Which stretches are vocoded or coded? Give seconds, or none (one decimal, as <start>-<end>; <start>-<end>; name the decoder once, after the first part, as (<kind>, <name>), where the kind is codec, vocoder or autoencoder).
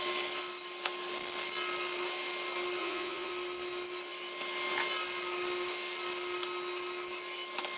2.8-3.3 (vocoder, Vocos)